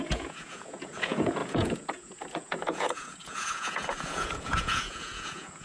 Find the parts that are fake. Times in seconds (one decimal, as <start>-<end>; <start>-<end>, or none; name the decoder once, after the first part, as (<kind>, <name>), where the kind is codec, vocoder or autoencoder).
0.0-5.6 (vocoder, Vocos)